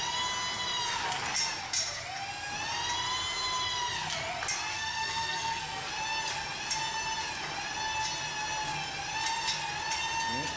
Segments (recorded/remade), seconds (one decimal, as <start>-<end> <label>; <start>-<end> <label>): 0.0-4.7 recorded; 4.7-5.9 remade; 5.9-10.6 recorded